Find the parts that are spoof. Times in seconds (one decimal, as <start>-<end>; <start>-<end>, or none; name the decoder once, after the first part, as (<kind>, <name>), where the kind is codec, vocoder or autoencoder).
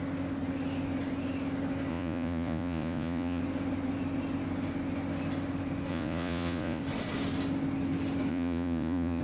1.9-3.4 (vocoder, Vocos); 5.9-6.8; 8.3-9.2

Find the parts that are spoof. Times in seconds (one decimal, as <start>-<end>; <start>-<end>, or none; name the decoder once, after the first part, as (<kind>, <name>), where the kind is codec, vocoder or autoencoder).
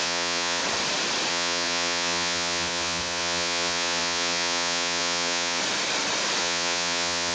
0.0-0.6 (vocoder, Vocos); 1.3-5.6; 6.4-7.3